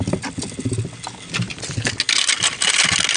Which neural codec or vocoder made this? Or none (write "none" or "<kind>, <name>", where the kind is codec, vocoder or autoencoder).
none